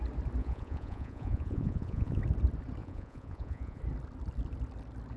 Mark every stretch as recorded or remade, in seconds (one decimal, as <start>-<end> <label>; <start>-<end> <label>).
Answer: 0.0-0.4 recorded; 0.4-2.2 remade; 2.2-2.8 recorded; 2.8-3.8 remade; 3.8-5.2 recorded

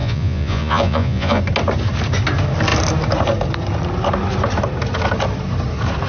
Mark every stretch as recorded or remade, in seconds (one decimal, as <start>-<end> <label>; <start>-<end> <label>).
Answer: 0.0-1.4 remade; 1.4-6.1 recorded

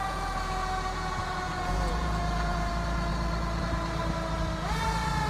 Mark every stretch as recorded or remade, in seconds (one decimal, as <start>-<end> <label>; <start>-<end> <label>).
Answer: 0.0-2.7 remade; 2.7-5.3 recorded

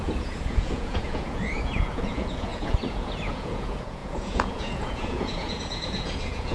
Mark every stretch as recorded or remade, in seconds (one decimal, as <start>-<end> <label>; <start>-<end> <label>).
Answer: 0.0-6.5 remade

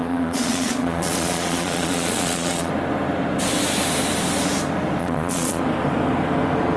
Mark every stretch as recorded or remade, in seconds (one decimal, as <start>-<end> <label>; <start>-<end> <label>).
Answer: 0.0-2.7 remade; 2.7-5.0 recorded; 5.0-5.6 remade; 5.6-6.8 recorded

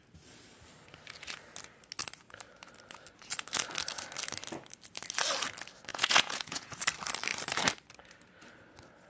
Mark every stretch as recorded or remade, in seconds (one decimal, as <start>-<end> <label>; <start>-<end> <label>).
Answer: 0.0-5.9 recorded; 5.9-6.8 remade; 6.8-9.1 recorded

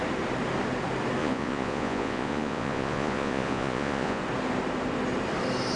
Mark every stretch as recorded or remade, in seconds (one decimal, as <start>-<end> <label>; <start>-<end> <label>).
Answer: 0.0-1.2 recorded; 1.2-4.2 remade; 4.2-5.8 recorded

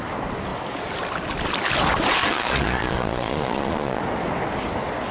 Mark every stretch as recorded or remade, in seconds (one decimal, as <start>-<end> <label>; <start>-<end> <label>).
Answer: 0.0-2.2 recorded; 2.2-4.0 remade; 4.0-5.1 recorded